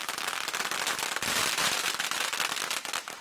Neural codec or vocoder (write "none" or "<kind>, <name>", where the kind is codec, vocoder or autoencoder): none